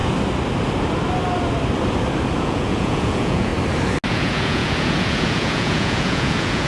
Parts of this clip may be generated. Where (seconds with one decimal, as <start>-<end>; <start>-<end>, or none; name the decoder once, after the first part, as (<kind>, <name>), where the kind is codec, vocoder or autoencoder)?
2.4-3.5 (vocoder, Vocos); 4.1-6.7